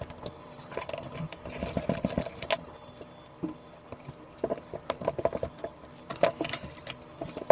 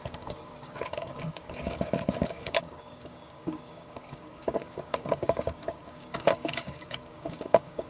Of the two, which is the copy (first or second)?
second